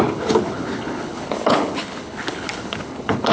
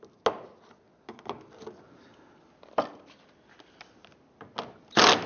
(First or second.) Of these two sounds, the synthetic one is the first